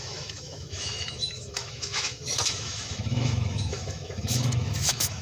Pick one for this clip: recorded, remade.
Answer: remade